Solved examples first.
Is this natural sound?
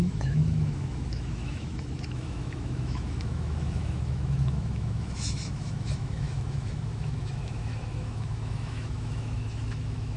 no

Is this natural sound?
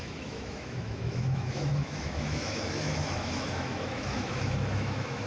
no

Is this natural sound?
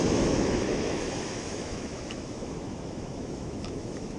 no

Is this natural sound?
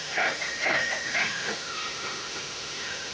no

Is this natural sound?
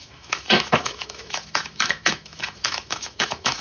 no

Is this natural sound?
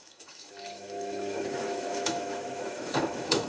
no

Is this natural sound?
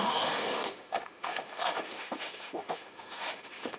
no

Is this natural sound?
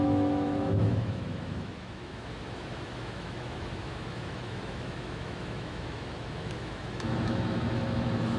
no